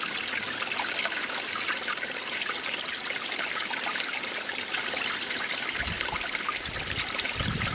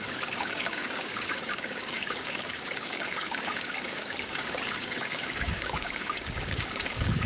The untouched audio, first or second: first